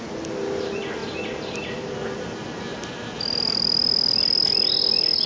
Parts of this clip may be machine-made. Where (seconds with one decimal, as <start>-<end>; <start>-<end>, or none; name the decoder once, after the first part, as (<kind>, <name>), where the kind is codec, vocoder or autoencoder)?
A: none